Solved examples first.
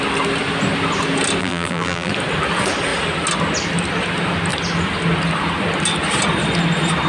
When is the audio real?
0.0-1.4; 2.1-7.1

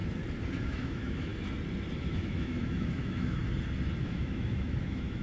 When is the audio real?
0.0-0.6; 1.3-2.0; 3.4-4.0

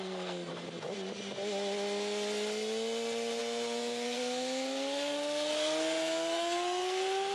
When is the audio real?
0.5-3.4

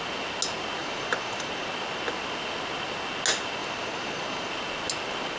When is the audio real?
0.0-0.8; 1.5-3.6; 4.5-5.4

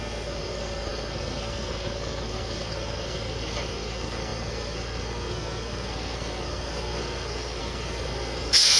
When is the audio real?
none

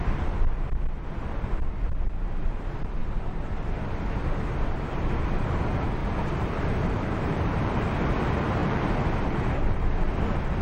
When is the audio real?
0.0-6.0; 7.8-8.6; 10.1-10.6

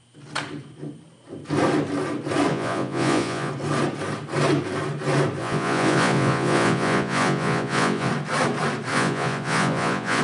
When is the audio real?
0.0-2.5; 3.5-5.4; 8.1-8.9